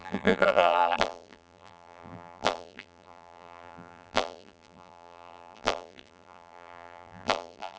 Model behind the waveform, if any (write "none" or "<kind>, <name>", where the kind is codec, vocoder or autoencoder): vocoder, BigVGAN v2